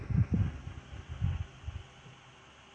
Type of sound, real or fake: real